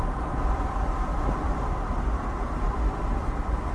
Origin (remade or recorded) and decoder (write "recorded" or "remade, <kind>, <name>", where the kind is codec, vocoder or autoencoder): recorded